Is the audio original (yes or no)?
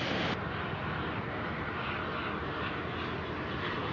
yes